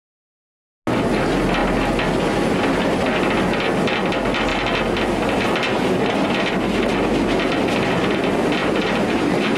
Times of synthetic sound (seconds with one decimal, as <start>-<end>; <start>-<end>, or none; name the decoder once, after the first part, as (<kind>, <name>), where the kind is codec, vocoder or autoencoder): 8.6-9.6 (vocoder, BigVGAN v2)